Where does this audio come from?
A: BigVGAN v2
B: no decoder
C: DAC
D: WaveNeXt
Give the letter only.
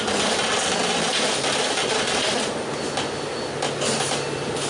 B